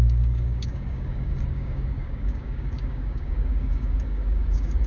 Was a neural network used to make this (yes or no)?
yes